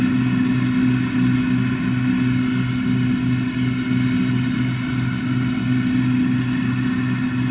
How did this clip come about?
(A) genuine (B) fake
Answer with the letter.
A